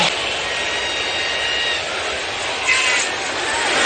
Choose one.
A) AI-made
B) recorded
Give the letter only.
B